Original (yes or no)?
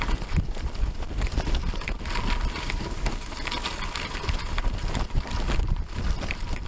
yes